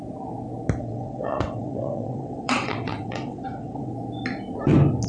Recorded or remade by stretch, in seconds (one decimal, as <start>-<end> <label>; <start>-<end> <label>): 0.0-0.8 recorded; 0.8-3.9 remade; 3.9-5.1 recorded